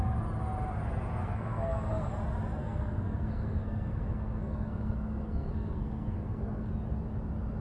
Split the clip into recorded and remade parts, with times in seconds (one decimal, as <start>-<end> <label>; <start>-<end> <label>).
0.0-1.2 recorded; 1.2-2.1 remade; 2.1-2.6 recorded; 2.6-6.7 remade; 6.7-7.6 recorded